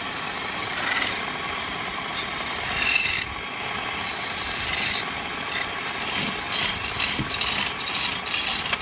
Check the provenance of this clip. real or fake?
real